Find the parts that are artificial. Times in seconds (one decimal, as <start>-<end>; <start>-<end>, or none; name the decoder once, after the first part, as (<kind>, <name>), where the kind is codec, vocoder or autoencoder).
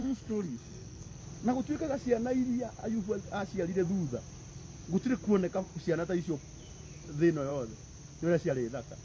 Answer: 0.0-1.2 (codec, SNAC)